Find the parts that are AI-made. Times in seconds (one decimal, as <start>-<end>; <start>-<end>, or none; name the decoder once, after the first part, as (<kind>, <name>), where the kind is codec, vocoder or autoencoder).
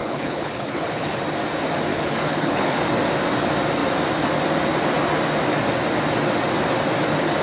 0.0-1.2 (codec, HILCodec); 1.9-2.8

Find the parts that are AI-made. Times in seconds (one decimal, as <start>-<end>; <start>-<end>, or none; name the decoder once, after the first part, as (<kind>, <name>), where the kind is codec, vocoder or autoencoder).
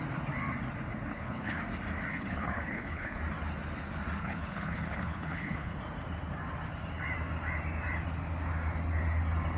1.1-1.6 (codec, HILCodec); 2.1-3.2; 4.2-5.8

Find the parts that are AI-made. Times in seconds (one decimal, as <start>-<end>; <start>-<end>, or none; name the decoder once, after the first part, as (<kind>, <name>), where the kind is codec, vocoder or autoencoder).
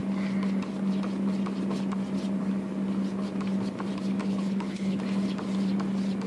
4.2-5.0 (codec, HILCodec)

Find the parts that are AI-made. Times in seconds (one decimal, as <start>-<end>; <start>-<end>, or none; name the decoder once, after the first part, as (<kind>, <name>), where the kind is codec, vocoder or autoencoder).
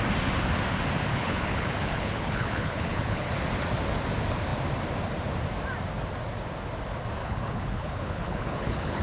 1.1-3.3 (codec, HILCodec); 7.2-9.0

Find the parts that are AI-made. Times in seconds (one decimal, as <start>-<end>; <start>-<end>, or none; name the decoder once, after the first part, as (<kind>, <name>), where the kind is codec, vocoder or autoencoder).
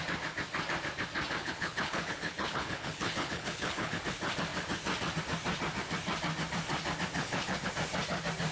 1.4-4.0 (codec, HILCodec); 7.2-7.7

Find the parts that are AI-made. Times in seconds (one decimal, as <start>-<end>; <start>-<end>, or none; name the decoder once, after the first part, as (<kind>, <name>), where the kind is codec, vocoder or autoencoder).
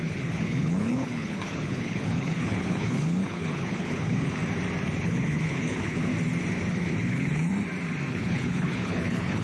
0.0-4.4 (codec, HILCodec); 5.0-6.1; 6.7-7.5; 8.1-9.4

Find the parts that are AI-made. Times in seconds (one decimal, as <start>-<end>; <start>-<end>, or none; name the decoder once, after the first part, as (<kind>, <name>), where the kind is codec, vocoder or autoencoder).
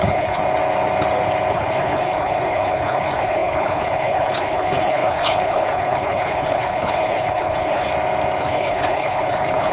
0.0-0.4 (codec, HILCodec); 1.5-7.9; 8.4-9.7